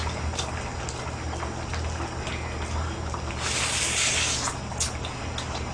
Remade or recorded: recorded